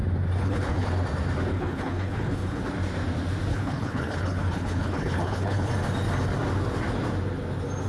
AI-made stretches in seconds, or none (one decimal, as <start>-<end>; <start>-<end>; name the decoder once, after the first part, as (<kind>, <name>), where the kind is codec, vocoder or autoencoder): 0.4-0.9 (codec, HILCodec); 1.5-2.6; 3.5-5.7